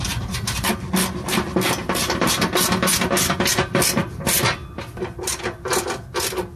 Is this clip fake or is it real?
real